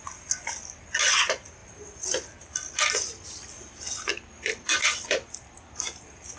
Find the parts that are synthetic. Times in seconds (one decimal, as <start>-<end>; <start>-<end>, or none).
1.6-2.8; 4.1-5.3